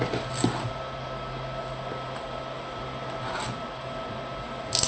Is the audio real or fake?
real